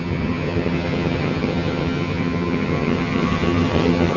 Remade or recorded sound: remade